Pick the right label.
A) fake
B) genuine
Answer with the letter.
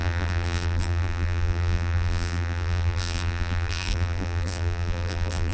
A